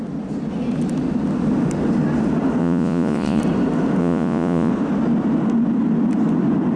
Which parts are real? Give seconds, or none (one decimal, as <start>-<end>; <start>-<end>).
0.0-2.6; 3.4-4.0; 4.7-6.8